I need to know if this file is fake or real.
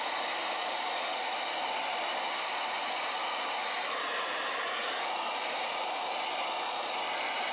real